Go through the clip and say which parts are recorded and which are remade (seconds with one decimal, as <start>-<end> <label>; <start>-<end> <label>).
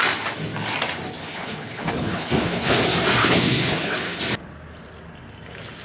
0.0-1.2 recorded; 1.2-2.8 remade; 2.8-3.2 recorded; 3.2-4.2 remade; 4.2-5.8 recorded